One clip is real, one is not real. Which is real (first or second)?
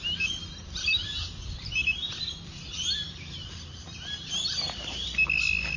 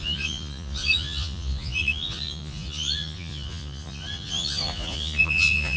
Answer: first